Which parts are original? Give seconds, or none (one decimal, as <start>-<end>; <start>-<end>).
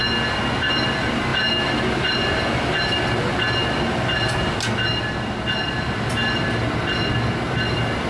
0.0-8.1